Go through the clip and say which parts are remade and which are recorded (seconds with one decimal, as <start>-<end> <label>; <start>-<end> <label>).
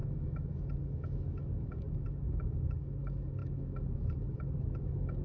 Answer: 0.0-5.2 remade